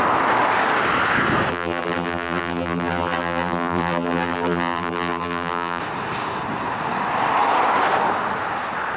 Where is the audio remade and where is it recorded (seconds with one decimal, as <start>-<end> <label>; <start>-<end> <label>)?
0.0-1.5 recorded; 1.5-5.8 remade; 5.8-9.0 recorded